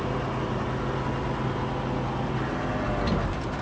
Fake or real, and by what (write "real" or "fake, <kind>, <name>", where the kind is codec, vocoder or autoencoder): real